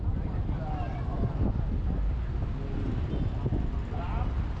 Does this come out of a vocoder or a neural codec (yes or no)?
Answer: no